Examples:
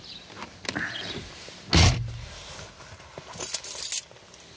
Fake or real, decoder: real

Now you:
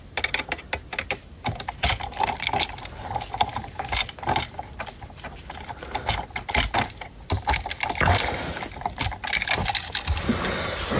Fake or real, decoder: real